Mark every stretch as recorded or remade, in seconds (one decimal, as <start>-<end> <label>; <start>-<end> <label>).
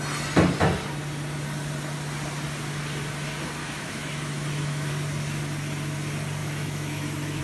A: 0.0-3.6 recorded; 3.6-4.9 remade; 4.9-6.4 recorded; 6.4-7.4 remade